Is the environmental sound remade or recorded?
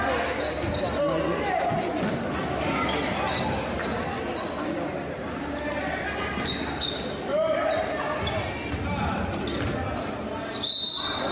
recorded